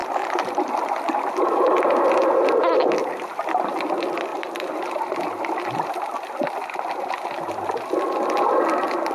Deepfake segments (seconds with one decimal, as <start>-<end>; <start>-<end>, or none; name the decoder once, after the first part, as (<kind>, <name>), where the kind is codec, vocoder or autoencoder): 0.0-0.7 (vocoder, BigVGAN v2); 4.3-5.0